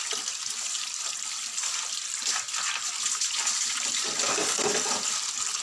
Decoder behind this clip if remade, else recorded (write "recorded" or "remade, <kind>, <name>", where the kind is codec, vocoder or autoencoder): recorded